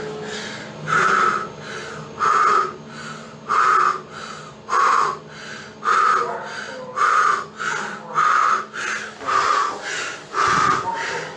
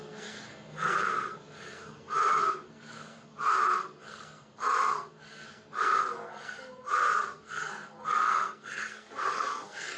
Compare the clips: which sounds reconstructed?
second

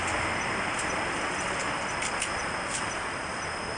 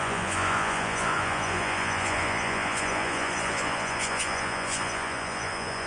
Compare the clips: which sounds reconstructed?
second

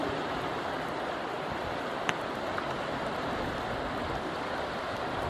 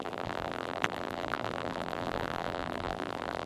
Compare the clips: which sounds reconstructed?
second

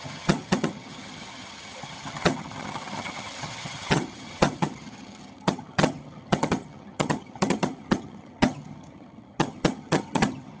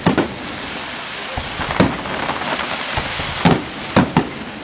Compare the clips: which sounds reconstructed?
first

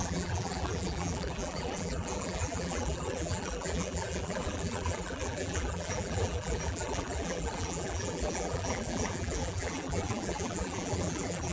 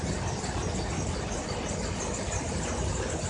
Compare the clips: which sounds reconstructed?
first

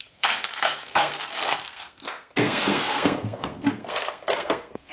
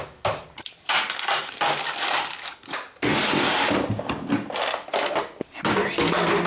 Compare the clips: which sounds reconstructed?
first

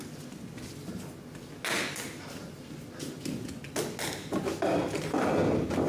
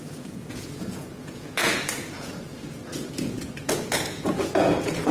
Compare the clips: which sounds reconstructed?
second